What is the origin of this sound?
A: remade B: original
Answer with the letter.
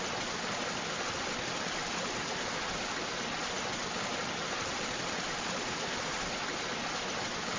B